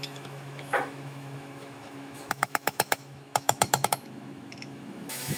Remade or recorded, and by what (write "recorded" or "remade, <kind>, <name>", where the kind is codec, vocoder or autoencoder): remade, autoencoder, DAC-VAE